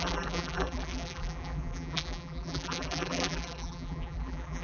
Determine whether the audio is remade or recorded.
remade